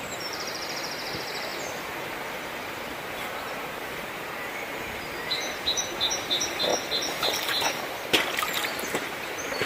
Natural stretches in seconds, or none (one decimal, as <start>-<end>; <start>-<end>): none